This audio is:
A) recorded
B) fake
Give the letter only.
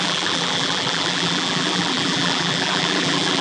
B